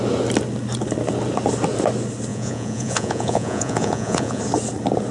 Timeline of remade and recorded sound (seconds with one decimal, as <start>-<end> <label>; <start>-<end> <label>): 0.0-2.3 recorded; 2.3-4.4 remade; 4.4-5.1 recorded